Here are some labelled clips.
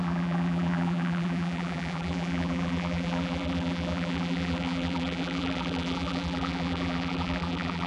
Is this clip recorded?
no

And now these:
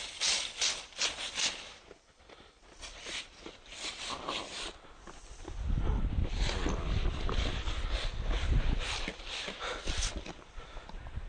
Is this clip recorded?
yes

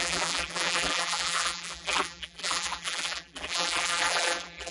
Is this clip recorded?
no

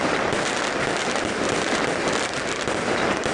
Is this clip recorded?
no